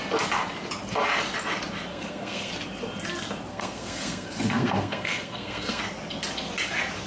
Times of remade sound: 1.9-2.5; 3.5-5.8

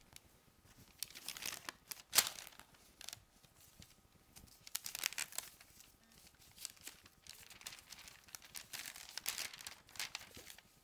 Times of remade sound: none

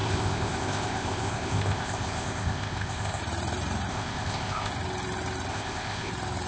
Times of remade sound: 0.0-3.2; 3.9-4.7; 5.5-6.1

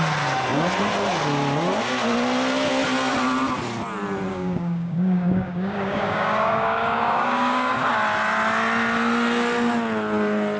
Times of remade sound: 4.3-7.7

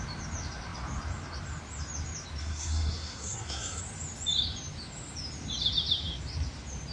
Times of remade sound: 2.4-3.8

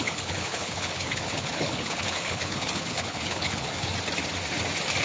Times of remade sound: 0.0-3.9

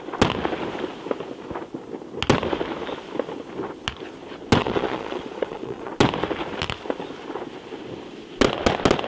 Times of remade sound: 4.6-5.9